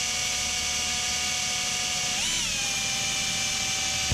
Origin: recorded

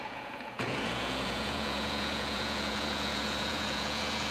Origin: remade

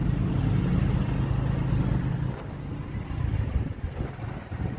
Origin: recorded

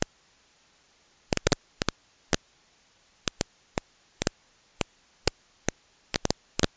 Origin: recorded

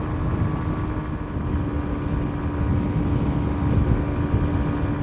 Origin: recorded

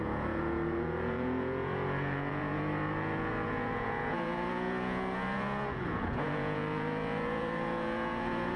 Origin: remade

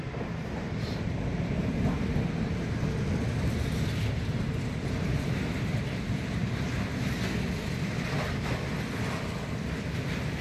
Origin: recorded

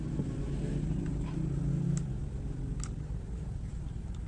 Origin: recorded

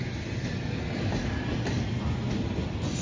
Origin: recorded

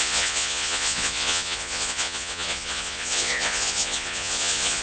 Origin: remade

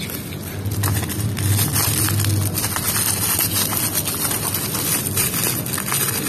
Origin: recorded